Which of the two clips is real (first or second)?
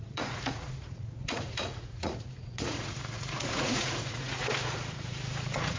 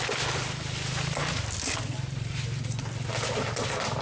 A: second